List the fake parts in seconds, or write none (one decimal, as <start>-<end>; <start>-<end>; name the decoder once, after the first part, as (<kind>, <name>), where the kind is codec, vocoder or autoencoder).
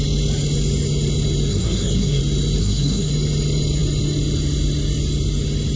1.5-2.2 (codec, SNAC); 2.6-3.1